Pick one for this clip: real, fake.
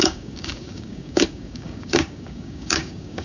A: fake